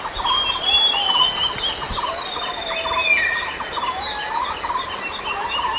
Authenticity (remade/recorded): recorded